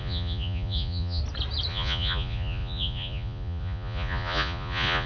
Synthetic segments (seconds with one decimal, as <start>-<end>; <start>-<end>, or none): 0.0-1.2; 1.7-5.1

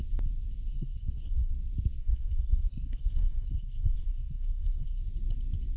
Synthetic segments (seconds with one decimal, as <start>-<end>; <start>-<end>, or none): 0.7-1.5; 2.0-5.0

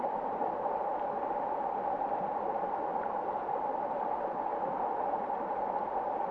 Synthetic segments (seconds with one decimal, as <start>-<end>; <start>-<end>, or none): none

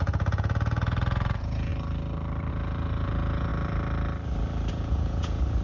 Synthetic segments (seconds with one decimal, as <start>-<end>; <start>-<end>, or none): 0.0-1.7; 2.5-3.5; 4.7-5.6